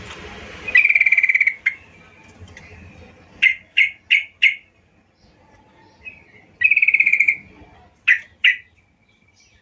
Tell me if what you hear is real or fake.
real